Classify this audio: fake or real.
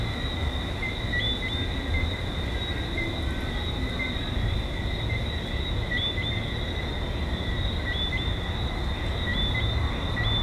real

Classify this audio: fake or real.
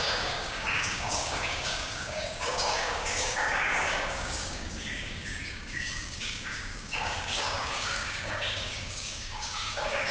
fake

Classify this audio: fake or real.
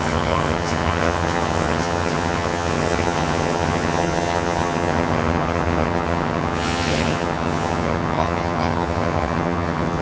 fake